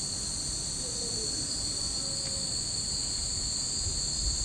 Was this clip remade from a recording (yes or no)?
no